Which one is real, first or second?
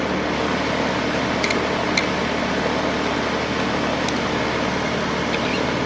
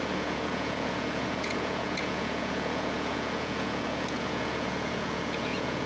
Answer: first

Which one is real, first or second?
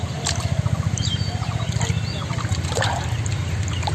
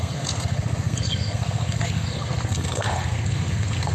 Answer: first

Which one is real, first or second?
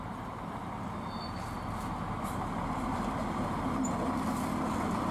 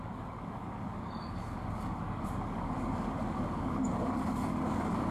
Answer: first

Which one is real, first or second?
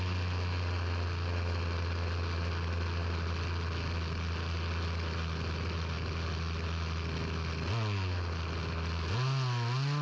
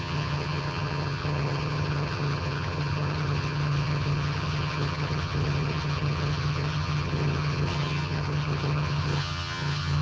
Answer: first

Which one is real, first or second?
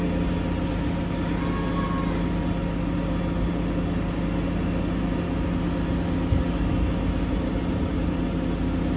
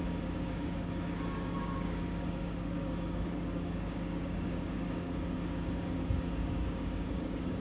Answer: first